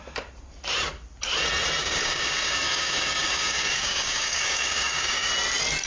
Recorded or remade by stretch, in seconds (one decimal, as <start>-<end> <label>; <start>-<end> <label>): 0.0-1.8 recorded; 1.8-5.3 remade; 5.3-5.9 recorded